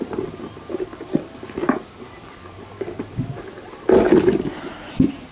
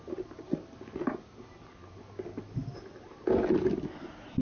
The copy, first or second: first